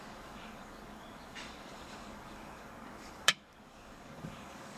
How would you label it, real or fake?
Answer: fake